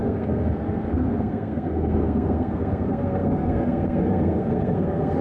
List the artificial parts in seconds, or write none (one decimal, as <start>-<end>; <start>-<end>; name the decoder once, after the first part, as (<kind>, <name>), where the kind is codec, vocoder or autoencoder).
0.0-5.2 (codec, SNAC)